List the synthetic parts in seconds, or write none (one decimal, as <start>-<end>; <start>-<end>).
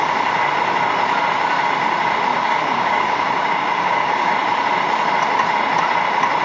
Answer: 2.3-4.3